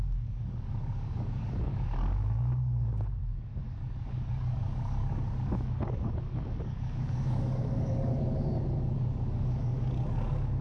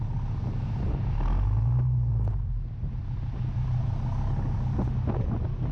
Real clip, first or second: second